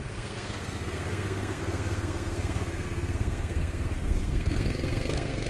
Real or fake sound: fake